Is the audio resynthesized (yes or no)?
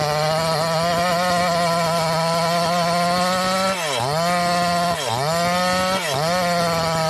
no